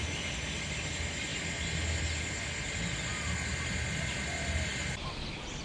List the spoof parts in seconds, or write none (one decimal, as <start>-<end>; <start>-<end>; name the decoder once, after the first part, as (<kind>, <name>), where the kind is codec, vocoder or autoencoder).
none